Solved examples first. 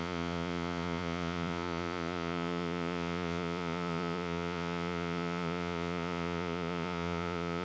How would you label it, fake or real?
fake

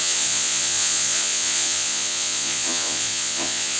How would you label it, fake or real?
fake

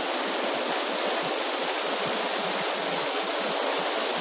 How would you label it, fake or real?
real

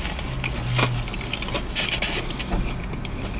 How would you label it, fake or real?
real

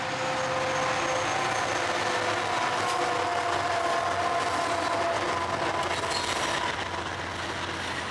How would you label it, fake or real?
real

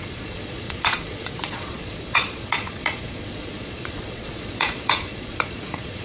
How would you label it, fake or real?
fake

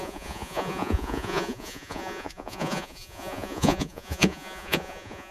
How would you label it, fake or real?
fake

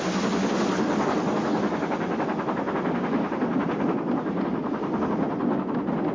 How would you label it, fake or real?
real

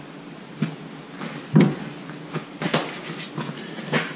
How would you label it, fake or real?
real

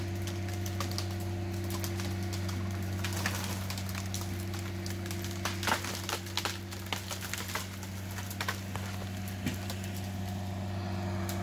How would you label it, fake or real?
real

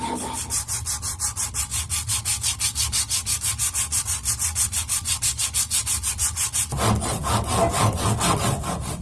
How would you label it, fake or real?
real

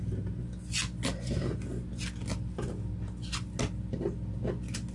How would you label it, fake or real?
real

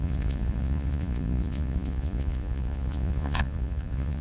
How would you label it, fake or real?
fake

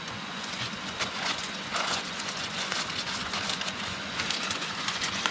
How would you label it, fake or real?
fake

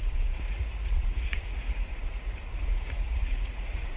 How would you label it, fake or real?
fake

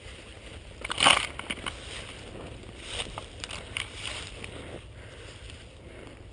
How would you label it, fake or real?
real